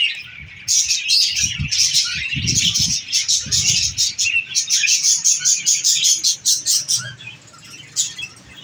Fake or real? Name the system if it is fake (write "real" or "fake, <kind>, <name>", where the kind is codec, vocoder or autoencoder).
real